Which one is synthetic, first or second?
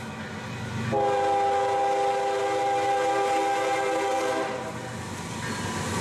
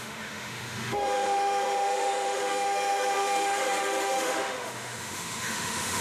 second